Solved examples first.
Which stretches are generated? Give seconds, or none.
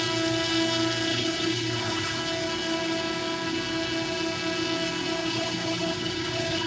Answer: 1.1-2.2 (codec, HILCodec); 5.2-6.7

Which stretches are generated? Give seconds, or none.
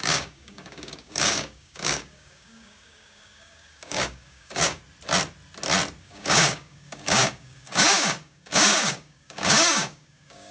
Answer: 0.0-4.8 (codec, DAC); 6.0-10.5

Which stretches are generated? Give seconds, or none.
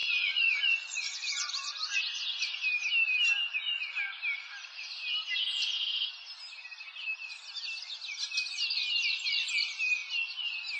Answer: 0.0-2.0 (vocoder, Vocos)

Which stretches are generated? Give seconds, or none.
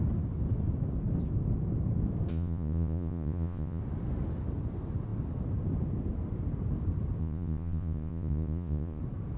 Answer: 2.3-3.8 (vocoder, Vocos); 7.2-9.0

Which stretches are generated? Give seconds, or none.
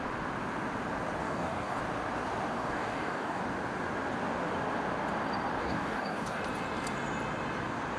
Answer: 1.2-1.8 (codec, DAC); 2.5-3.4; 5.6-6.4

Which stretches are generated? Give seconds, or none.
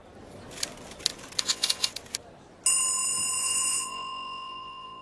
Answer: 1.4-1.9 (vocoder, Vocos); 3.4-5.0